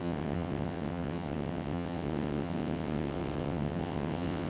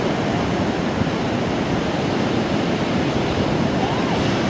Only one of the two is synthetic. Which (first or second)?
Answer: first